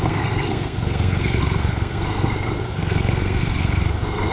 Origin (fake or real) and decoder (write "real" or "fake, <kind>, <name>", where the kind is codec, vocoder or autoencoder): fake, codec, SNAC